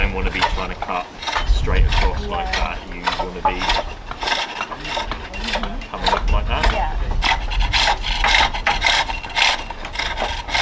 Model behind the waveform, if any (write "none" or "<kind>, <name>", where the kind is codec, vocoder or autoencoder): none